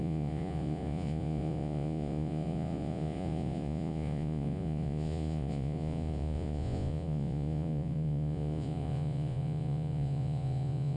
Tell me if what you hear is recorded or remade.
remade